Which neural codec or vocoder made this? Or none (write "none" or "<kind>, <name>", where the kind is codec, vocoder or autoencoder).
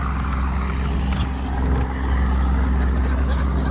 none